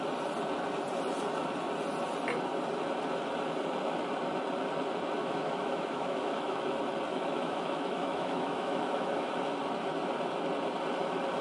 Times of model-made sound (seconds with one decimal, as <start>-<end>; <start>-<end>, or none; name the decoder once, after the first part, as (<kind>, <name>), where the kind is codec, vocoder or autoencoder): 5.2-6.6 (autoencoder, DAC-VAE); 7.1-9.3